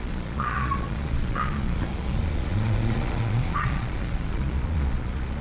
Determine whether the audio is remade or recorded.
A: remade